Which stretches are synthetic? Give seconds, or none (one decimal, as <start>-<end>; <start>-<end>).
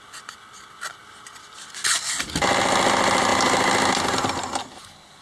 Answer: none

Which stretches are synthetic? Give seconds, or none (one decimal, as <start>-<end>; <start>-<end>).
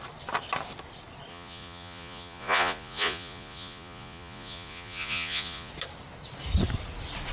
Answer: 1.3-5.7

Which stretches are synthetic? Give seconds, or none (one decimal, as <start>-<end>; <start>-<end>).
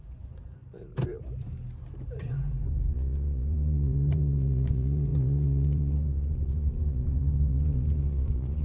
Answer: 0.0-0.6; 2.2-8.6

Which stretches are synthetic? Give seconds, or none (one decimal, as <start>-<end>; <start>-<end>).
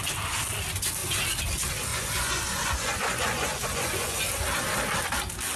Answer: 1.9-4.2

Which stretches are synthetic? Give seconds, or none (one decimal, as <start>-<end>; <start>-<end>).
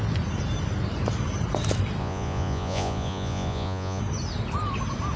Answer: 2.0-4.0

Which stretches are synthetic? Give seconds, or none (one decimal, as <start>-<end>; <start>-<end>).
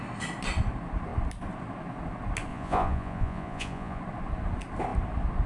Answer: 2.5-4.0